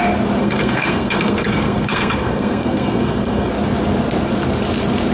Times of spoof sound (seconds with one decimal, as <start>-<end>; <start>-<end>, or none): 0.4-3.5